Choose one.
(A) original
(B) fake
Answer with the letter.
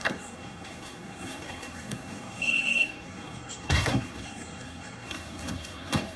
B